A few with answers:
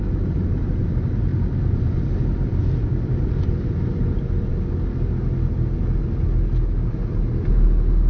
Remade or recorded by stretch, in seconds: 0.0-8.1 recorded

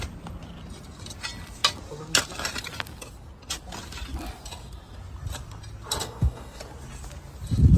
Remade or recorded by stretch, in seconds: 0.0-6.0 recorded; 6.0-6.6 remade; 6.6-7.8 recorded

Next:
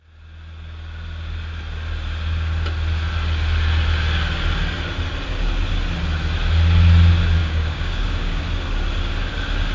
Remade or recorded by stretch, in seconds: 0.0-7.4 recorded; 7.4-8.4 remade; 8.4-9.7 recorded